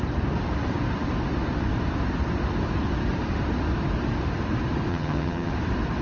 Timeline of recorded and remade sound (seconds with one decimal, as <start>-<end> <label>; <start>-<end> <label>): 0.0-4.9 recorded; 4.9-5.5 remade; 5.5-6.0 recorded